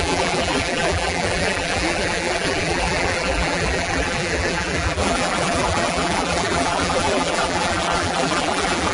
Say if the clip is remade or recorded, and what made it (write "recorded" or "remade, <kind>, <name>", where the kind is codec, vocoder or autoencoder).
remade, vocoder, BigVGAN v2